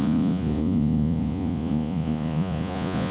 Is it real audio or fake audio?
fake